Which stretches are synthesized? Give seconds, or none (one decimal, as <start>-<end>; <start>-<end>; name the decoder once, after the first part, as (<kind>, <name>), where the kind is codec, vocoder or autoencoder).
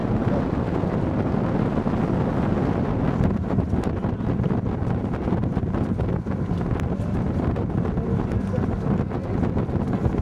none